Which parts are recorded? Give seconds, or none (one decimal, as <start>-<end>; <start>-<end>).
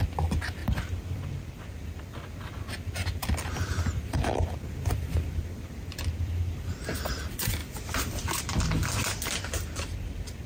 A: 0.0-0.6; 1.2-3.2; 6.4-7.6; 8.4-10.5